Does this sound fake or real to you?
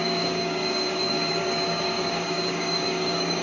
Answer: fake